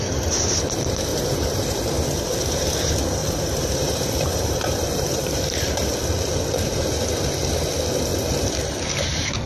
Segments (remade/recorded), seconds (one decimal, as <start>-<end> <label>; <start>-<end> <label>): 0.0-1.1 recorded; 1.1-1.8 remade; 1.8-3.2 recorded; 3.2-5.9 remade; 5.9-9.5 recorded